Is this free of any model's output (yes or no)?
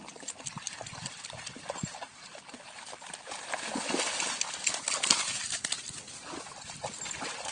yes